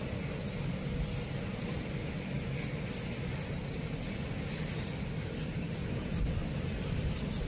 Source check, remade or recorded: recorded